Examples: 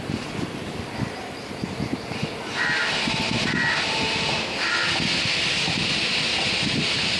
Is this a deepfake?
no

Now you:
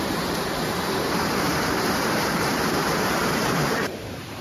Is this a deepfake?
yes